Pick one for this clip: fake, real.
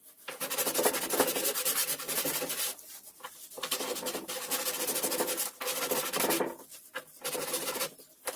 real